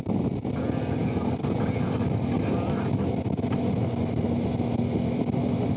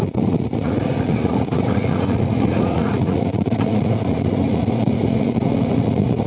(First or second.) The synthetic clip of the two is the second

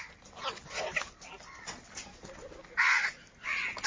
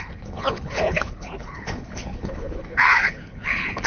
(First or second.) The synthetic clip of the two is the second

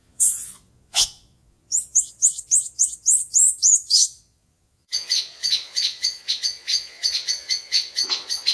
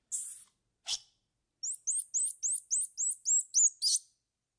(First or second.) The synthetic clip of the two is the first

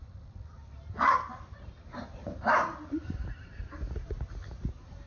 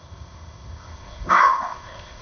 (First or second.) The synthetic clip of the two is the second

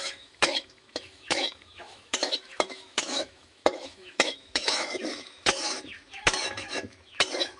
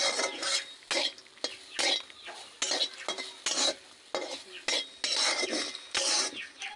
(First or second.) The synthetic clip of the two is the first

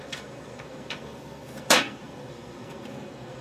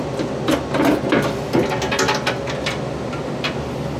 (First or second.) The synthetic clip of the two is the first